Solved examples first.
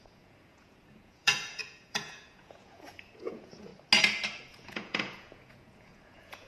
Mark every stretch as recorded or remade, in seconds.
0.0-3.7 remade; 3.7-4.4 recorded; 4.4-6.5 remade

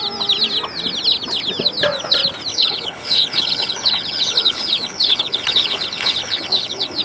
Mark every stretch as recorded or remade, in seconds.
0.0-2.5 recorded; 2.5-7.0 remade

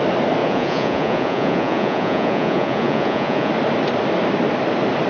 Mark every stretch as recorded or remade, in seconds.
0.0-0.4 recorded; 0.4-3.5 remade; 3.5-5.1 recorded